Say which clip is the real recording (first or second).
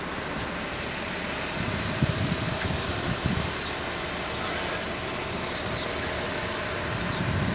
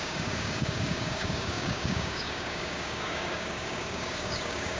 first